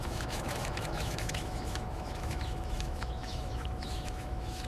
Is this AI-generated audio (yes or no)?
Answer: yes